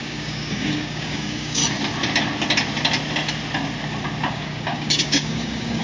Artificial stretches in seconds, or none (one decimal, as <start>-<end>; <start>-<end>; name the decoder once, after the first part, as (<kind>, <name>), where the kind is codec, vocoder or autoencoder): 0.0-1.6 (codec, DAC); 4.3-5.8